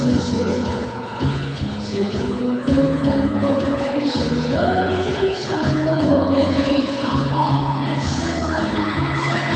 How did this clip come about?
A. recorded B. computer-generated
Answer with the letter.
B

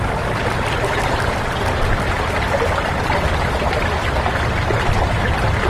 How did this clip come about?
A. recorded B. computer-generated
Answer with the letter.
A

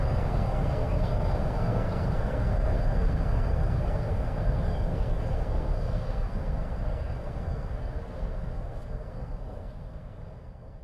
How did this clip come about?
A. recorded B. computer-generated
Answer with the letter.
B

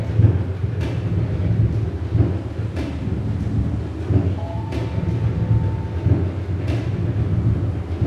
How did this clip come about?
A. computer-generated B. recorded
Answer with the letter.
B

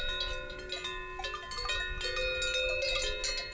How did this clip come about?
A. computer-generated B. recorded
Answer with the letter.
B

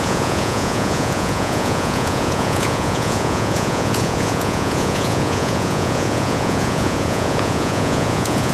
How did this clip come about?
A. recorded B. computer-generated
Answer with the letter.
B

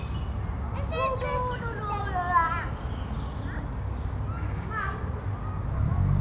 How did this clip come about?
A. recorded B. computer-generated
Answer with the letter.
A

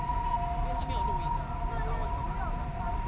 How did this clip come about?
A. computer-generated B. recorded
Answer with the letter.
B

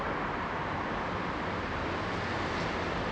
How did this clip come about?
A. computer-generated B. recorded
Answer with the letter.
B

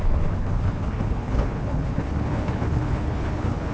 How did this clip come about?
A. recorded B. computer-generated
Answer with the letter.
B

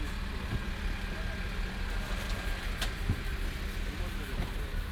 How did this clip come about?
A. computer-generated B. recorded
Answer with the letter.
B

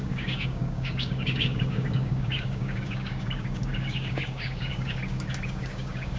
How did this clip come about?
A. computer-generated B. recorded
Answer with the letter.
A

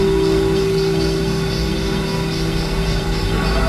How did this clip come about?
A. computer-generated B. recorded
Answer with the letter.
A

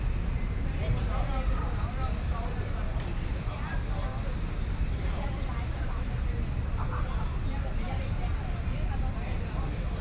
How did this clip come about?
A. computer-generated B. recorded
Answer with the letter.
B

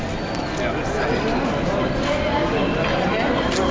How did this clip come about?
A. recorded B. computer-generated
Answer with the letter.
A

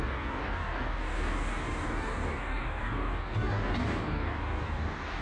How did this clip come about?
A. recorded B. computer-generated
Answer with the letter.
B